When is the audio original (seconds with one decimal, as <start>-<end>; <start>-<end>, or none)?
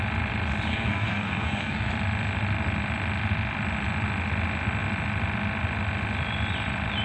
0.0-0.7; 1.9-7.0